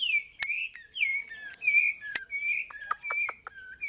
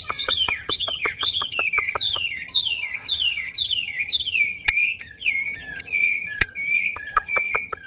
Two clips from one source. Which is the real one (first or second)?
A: first